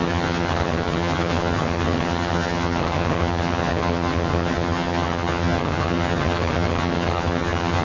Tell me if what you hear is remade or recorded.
remade